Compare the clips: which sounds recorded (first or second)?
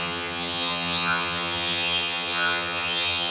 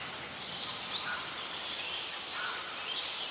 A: second